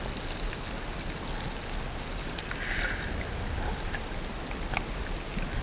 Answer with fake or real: real